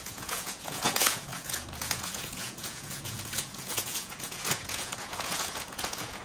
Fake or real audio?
fake